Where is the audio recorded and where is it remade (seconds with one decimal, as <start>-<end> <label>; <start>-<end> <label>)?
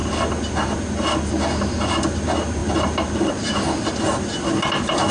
0.0-5.1 recorded